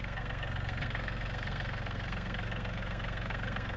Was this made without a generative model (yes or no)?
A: no